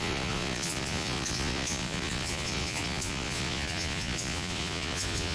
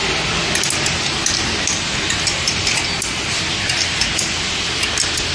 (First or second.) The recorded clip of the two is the second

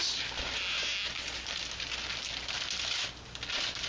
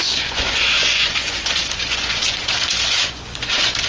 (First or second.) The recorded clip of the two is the first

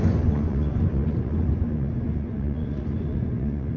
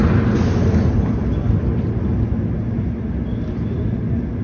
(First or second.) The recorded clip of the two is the second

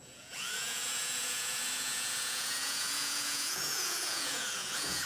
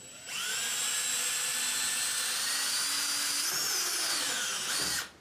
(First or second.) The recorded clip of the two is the second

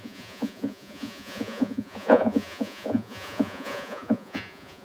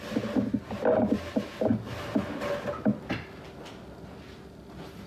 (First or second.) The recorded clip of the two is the second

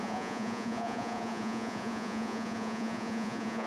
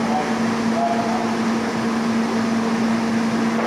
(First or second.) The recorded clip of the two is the second